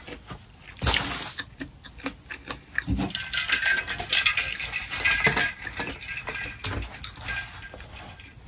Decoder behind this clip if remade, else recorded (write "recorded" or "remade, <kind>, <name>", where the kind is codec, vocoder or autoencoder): recorded